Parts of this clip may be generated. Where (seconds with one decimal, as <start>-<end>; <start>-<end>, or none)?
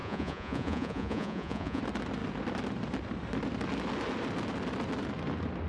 0.0-1.8